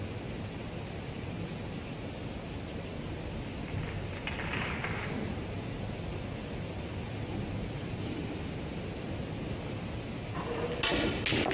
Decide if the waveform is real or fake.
real